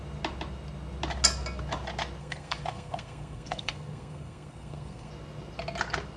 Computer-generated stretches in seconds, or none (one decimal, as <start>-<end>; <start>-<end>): 2.2-5.1